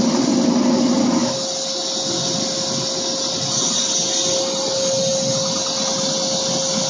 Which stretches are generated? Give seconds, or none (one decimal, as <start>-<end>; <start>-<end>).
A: none